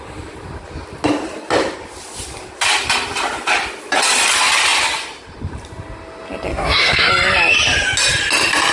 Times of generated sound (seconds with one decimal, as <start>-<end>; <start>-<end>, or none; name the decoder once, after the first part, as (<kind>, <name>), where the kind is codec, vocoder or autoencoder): 6.5-7.1 (codec, SNAC)